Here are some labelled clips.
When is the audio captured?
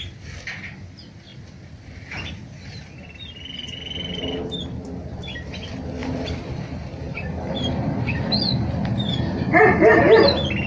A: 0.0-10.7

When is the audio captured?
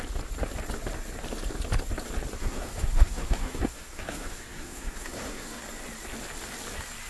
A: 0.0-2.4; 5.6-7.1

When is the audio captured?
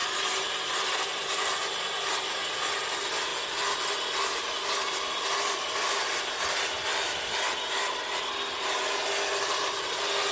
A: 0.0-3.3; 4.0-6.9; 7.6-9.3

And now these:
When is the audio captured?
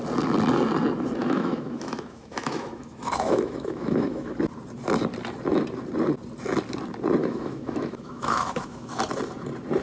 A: 0.0-1.2; 4.3-7.2; 9.0-9.8